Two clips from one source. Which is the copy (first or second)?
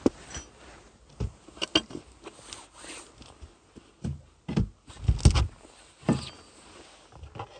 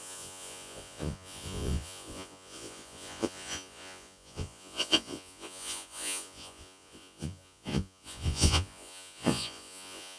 second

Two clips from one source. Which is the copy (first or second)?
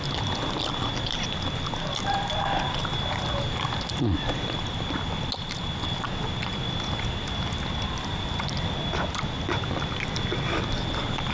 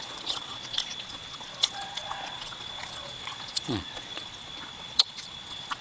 second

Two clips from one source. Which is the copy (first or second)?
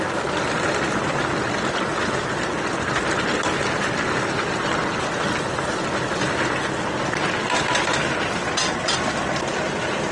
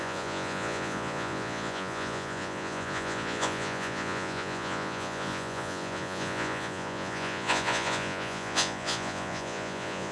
second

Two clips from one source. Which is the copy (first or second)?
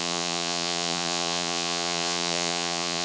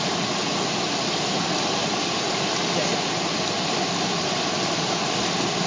first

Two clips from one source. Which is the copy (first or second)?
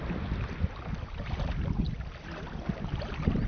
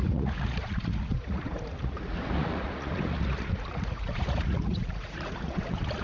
second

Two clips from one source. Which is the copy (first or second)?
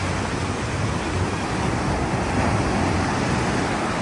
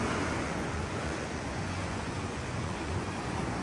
second